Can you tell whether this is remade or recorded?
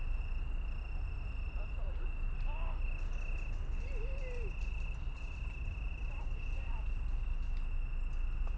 recorded